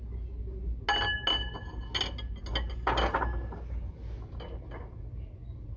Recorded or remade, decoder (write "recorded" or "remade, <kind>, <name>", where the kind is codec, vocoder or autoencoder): recorded